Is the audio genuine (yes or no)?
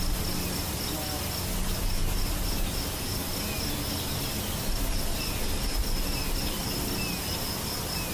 yes